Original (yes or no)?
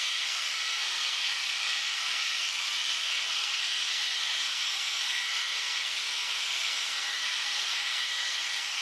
no